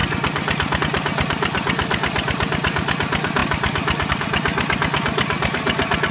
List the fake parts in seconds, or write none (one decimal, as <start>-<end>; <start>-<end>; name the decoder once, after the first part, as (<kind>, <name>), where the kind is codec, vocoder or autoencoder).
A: none